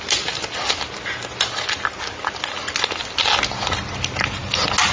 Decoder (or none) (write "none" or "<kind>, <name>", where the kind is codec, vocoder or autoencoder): none